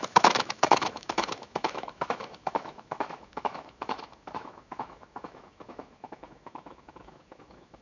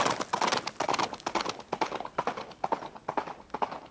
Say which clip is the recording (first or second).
second